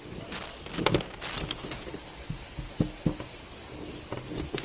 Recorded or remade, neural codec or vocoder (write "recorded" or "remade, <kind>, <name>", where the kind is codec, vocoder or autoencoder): recorded